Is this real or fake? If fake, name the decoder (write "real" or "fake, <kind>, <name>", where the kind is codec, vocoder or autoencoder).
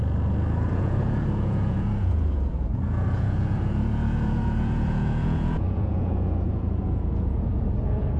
fake, vocoder, Vocos